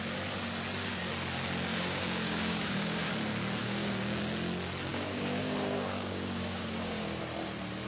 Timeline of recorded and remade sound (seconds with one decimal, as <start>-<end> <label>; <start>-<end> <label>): 0.0-1.7 recorded; 1.7-3.1 remade; 3.1-3.6 recorded; 3.6-4.2 remade; 4.2-4.9 recorded; 4.9-7.2 remade; 7.2-7.9 recorded